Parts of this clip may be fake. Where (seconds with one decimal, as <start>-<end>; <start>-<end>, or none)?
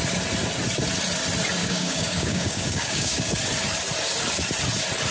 1.6-3.3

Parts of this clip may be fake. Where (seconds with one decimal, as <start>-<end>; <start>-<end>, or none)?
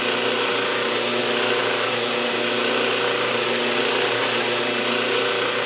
none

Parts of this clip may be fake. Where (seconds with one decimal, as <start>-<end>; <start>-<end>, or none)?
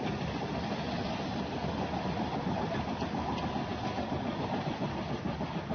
none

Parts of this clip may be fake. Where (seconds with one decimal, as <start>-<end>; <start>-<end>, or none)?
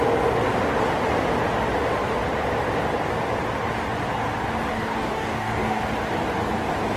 4.7-5.8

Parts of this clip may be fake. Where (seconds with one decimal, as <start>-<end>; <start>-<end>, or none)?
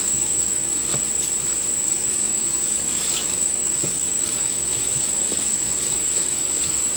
0.0-0.9; 1.8-7.0